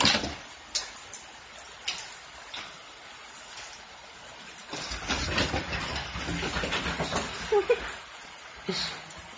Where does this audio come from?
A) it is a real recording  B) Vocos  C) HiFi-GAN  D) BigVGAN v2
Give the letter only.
A